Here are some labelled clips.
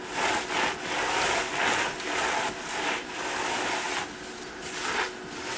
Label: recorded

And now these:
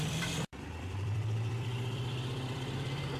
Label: remade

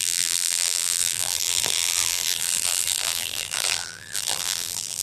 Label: remade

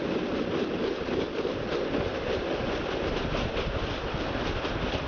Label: remade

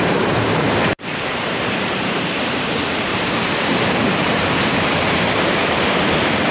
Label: remade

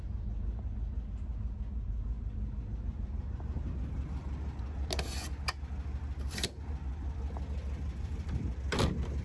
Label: recorded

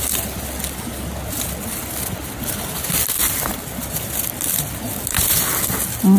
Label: recorded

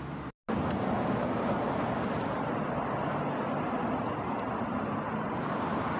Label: recorded